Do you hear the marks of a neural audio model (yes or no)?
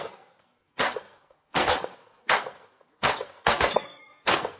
yes